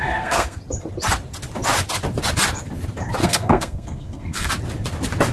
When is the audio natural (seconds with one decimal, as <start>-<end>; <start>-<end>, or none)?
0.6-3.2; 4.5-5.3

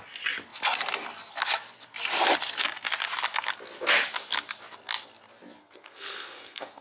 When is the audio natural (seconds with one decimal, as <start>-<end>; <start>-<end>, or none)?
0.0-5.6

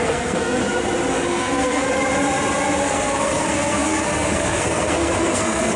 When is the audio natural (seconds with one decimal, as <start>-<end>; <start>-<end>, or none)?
0.6-1.1; 1.9-2.8

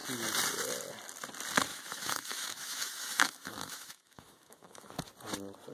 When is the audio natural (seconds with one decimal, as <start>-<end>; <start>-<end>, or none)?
0.0-1.7; 4.9-5.7

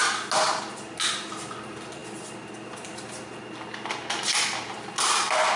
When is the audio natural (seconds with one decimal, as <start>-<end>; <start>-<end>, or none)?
0.0-5.6

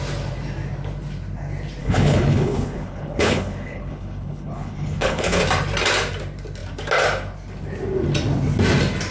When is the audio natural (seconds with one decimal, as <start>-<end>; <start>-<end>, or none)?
0.0-1.8; 5.4-9.1